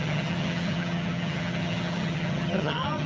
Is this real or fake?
fake